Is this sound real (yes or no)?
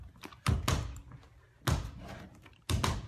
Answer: yes